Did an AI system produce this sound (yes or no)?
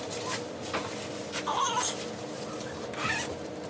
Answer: no